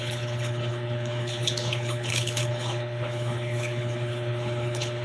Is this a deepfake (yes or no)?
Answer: yes